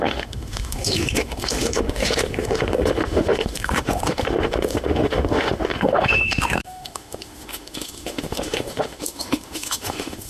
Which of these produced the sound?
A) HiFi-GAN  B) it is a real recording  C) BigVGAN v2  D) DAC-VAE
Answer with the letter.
D